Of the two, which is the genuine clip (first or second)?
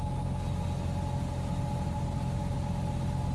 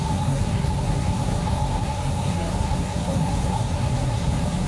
first